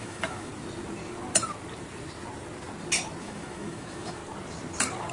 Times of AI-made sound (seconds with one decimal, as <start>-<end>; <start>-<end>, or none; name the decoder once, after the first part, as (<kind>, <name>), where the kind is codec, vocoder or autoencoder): 0.0-0.5 (autoencoder, DAC-VAE); 3.2-4.2